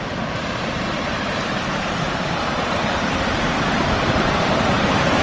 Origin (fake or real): fake